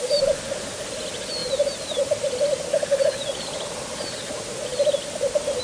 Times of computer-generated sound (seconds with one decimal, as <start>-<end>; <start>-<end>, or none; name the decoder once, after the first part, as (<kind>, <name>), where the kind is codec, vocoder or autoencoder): none